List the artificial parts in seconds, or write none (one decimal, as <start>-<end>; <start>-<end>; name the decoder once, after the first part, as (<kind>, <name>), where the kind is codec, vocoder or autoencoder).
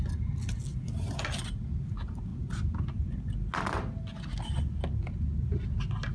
none